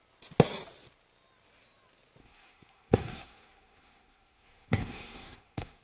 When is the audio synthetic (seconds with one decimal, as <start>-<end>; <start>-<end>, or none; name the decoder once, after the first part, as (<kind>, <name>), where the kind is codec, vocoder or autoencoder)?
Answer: 2.2-5.8 (codec, SNAC)